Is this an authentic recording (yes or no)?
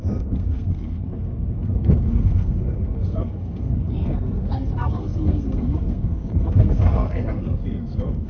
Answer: no